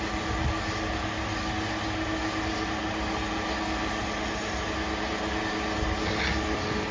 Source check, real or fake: real